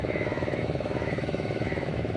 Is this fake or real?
fake